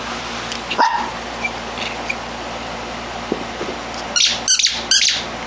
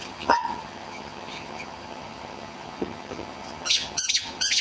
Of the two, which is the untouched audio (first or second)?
first